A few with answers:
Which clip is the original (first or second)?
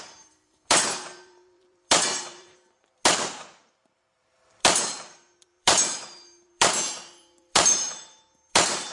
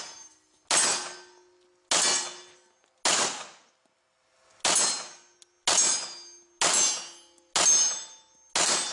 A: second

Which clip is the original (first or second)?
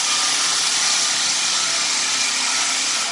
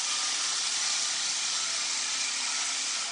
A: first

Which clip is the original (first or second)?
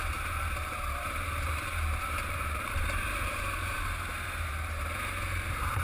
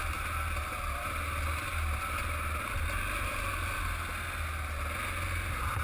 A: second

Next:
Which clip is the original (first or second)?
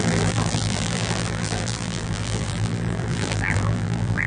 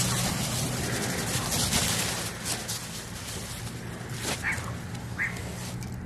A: second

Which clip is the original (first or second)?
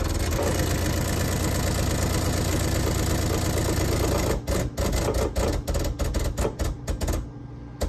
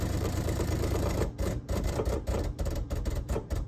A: first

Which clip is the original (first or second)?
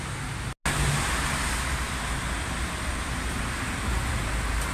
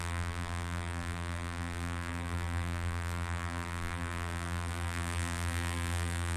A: first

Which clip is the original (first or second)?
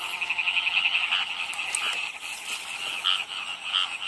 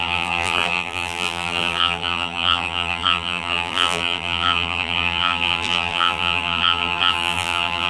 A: first